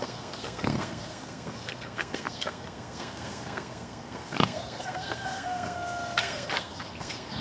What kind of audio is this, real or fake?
fake